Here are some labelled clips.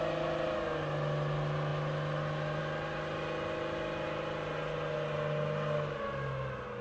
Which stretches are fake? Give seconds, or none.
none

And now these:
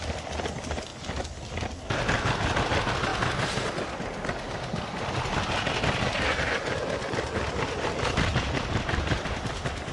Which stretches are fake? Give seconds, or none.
8.3-9.9

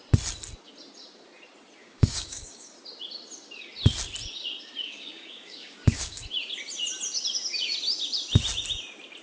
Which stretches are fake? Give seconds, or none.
1.8-2.7; 4.8-6.2